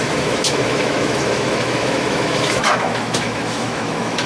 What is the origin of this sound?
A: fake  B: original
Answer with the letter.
A